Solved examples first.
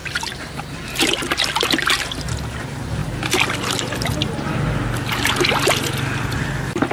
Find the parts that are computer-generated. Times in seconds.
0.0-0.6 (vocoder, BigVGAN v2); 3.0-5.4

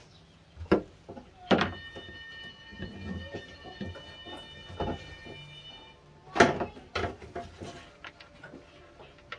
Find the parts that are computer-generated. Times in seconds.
none

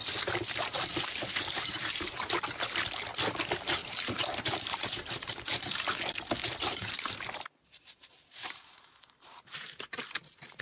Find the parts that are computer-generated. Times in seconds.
0.0-2.2 (vocoder, BigVGAN v2); 3.8-6.0; 6.4-10.6

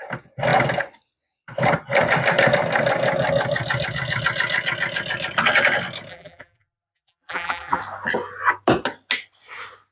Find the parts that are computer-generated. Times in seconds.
6.1-7.8 (vocoder, BigVGAN v2)

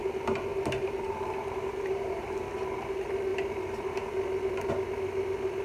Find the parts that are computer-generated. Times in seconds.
0.5-2.9 (vocoder, BigVGAN v2)